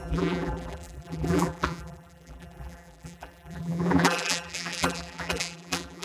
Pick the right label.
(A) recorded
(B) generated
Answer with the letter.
B